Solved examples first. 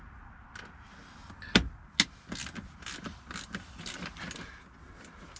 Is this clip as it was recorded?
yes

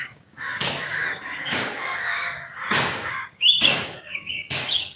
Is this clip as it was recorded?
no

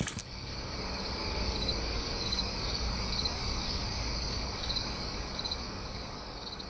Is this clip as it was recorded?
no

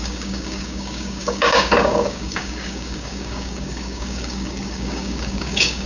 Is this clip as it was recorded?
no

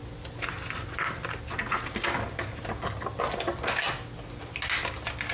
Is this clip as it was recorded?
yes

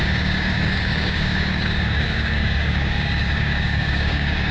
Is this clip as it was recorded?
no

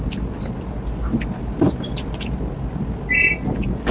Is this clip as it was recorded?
yes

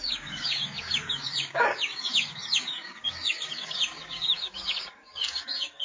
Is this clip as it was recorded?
no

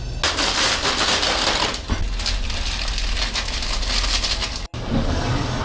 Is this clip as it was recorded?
yes